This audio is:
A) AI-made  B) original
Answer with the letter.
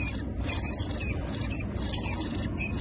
B